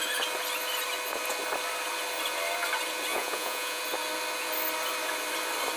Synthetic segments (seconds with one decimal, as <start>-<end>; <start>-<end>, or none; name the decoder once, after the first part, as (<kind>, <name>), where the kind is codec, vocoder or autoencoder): 3.1-3.8 (vocoder, Vocos)

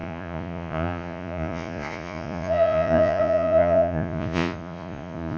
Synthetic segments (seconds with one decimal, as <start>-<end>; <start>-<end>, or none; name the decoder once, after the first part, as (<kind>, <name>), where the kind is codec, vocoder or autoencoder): 0.0-5.4 (vocoder, Vocos)